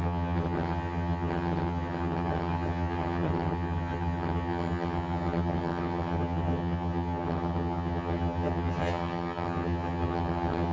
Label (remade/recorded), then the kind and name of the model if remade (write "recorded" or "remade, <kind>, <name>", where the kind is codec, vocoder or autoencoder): remade, vocoder, HiFi-GAN